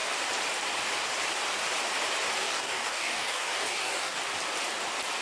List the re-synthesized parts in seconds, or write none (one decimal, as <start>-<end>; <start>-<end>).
2.4-4.2